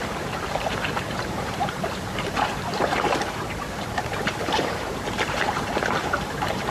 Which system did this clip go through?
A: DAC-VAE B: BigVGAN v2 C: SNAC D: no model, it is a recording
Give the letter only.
B